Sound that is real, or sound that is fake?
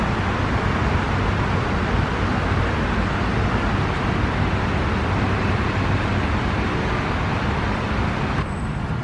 real